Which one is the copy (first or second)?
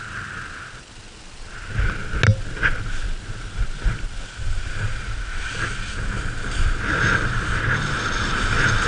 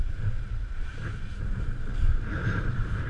second